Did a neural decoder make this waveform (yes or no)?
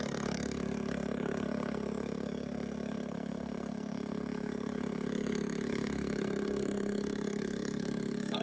yes